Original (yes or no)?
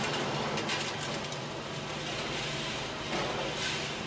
yes